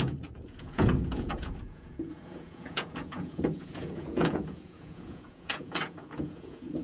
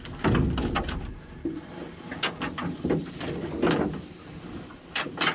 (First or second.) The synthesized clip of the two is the first